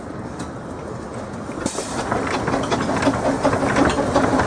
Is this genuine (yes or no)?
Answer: yes